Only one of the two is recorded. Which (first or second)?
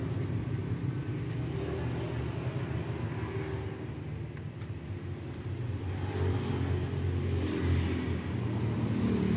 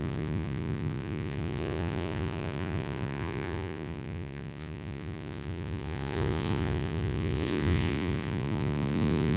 first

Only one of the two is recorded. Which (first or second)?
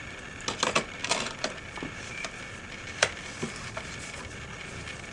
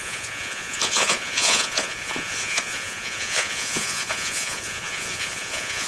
first